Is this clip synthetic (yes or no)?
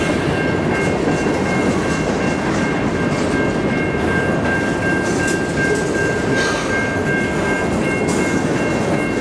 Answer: no